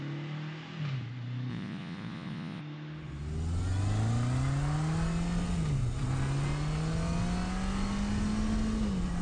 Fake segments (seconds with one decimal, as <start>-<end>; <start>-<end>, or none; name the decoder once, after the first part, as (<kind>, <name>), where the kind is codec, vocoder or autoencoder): 1.5-2.6 (vocoder, Vocos)